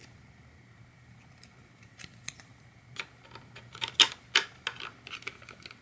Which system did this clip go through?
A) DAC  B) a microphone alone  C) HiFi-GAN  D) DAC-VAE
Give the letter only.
B